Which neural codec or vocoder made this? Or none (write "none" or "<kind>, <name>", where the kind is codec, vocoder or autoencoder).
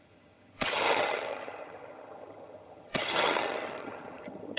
vocoder, HiFi-GAN